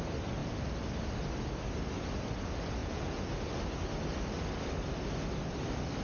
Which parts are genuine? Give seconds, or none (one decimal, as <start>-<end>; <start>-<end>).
0.0-2.8; 3.3-6.0